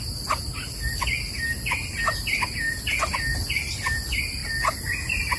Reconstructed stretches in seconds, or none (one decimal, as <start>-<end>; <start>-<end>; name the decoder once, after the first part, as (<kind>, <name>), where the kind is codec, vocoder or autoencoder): none